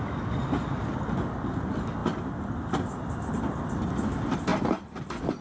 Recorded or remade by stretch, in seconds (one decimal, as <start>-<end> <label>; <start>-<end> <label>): 0.0-4.5 recorded; 4.5-5.4 remade